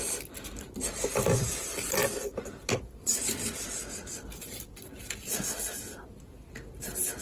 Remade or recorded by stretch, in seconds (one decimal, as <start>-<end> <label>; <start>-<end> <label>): 0.0-2.0 recorded; 2.0-6.3 remade; 6.3-7.2 recorded